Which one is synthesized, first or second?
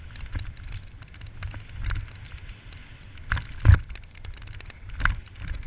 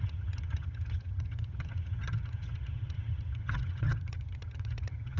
second